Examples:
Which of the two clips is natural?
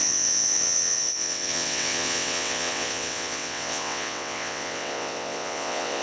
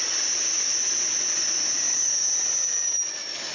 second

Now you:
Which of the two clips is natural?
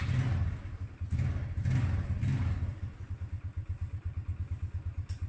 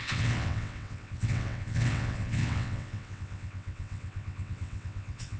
first